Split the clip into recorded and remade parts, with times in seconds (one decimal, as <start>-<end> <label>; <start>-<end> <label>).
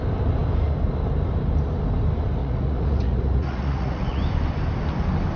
0.0-2.4 recorded; 2.4-4.2 remade; 4.2-5.4 recorded